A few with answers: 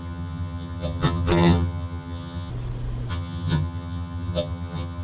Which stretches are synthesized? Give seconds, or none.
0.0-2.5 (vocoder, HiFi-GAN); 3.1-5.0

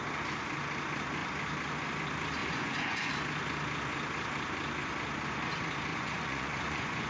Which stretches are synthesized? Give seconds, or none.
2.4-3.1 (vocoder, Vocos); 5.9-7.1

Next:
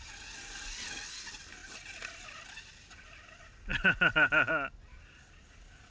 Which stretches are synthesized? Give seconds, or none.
none